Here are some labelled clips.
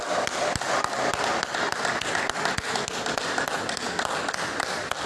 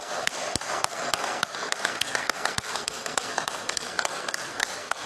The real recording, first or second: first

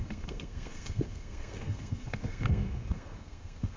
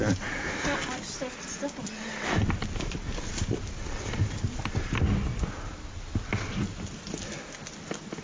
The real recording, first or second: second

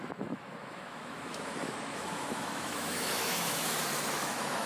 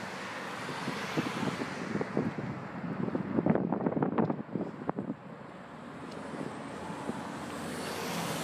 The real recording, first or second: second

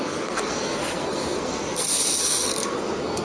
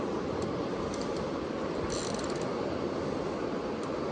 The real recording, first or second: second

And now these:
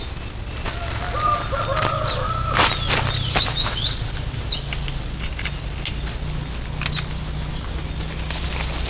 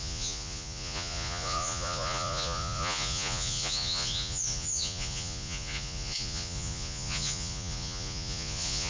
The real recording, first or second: first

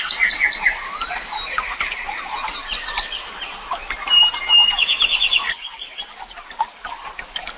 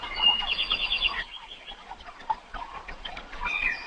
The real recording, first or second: first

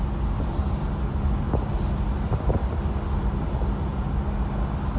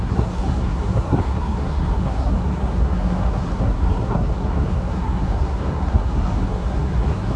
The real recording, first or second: first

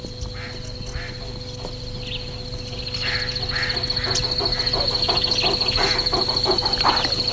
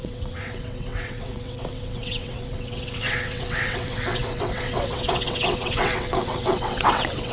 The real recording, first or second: first